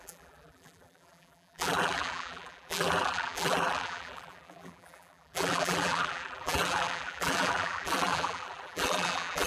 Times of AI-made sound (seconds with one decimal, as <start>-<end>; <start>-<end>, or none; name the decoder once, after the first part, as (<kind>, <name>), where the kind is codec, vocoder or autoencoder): 0.0-9.5 (vocoder, BigVGAN v2)